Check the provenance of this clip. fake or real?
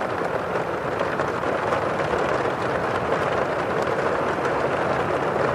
real